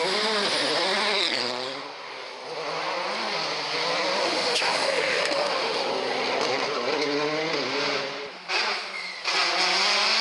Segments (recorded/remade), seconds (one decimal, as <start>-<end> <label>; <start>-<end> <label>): 0.0-4.2 recorded; 4.2-5.9 remade; 5.9-10.2 recorded